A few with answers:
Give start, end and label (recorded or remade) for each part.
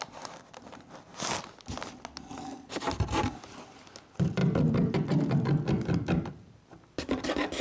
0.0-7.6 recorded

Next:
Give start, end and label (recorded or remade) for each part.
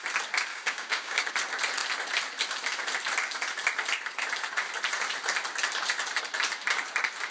0.0-0.5 recorded; 0.5-1.3 remade; 1.3-7.3 recorded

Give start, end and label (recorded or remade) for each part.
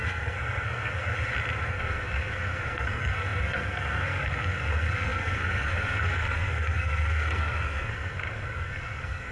0.0-1.1 remade; 1.1-1.7 recorded; 1.7-9.3 remade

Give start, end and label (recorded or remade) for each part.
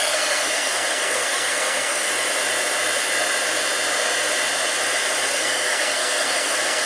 0.0-2.1 remade; 2.1-5.3 recorded; 5.3-6.9 remade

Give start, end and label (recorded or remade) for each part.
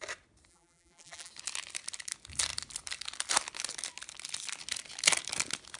0.0-0.5 recorded; 0.5-1.3 remade; 1.3-5.8 recorded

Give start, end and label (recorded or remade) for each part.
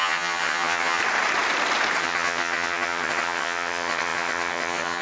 0.0-1.0 remade; 1.0-2.0 recorded; 2.0-5.0 remade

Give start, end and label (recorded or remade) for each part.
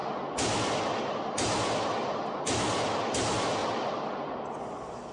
0.0-5.1 recorded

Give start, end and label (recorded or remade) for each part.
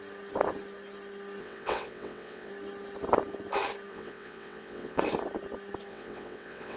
0.0-1.4 recorded; 1.4-2.5 remade; 2.5-3.9 recorded; 3.9-5.0 remade; 5.0-5.9 recorded; 5.9-6.8 remade